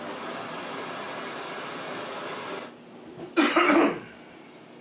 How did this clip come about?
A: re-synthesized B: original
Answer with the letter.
B